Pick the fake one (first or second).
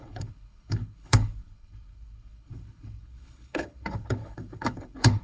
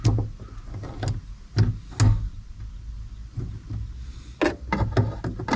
first